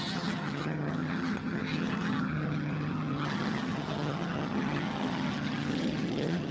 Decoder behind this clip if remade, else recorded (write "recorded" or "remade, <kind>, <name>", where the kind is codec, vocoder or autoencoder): remade, vocoder, HiFi-GAN